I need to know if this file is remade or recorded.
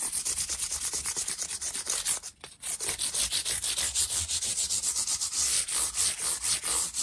recorded